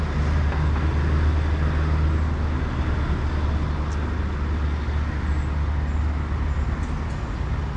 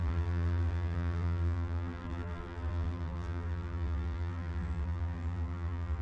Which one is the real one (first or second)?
first